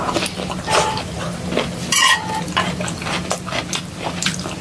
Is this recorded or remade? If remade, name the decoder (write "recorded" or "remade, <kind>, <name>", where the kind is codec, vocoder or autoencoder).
remade, vocoder, BigVGAN v2